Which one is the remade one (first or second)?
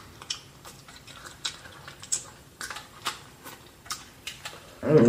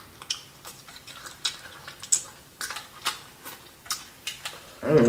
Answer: first